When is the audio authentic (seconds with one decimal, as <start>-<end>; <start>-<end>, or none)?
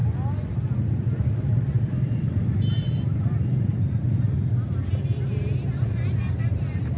0.0-1.8; 3.7-4.5